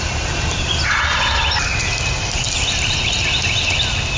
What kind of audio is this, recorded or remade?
recorded